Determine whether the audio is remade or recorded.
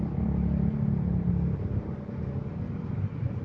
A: recorded